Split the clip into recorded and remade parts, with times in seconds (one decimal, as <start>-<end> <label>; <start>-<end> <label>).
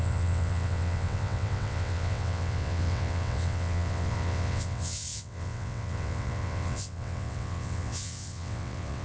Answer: 0.0-9.0 remade